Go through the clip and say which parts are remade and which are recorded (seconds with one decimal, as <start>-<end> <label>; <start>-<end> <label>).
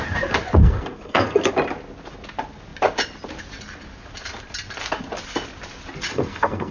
0.0-0.6 recorded; 0.6-1.5 remade; 1.5-6.1 recorded; 6.1-6.7 remade